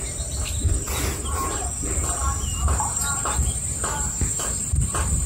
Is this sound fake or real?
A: fake